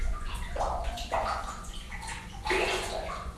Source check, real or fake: fake